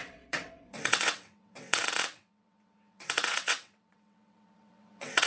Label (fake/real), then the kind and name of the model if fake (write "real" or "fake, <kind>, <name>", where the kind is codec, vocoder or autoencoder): fake, vocoder, WaveNeXt